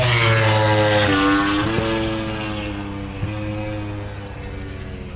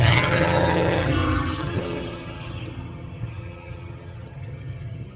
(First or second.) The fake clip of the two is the second